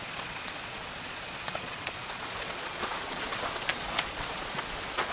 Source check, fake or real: fake